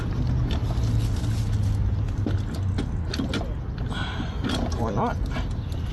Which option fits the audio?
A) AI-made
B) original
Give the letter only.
B